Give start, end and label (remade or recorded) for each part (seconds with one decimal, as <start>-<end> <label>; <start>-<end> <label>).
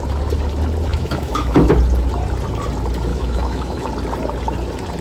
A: 0.0-0.9 recorded; 0.9-1.7 remade; 1.7-3.1 recorded; 3.1-3.9 remade; 3.9-5.0 recorded